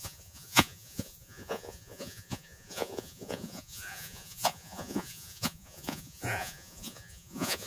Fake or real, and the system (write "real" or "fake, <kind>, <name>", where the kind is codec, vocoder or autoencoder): fake, vocoder, Vocos